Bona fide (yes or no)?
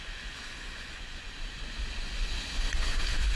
no